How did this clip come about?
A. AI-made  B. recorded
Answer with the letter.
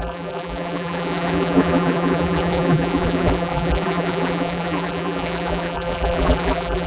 A